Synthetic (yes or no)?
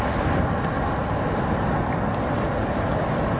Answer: no